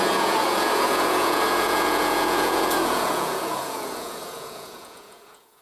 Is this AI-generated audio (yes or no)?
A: yes